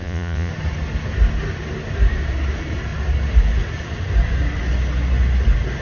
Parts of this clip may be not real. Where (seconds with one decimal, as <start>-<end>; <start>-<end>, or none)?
0.0-0.5